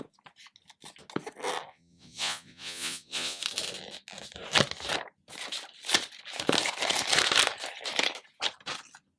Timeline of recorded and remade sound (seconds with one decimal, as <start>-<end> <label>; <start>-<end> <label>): 0.0-1.7 recorded; 1.7-3.4 remade; 3.4-9.2 recorded